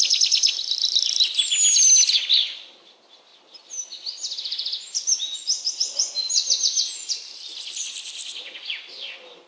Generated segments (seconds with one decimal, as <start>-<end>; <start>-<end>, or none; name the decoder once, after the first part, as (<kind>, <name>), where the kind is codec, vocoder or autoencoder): none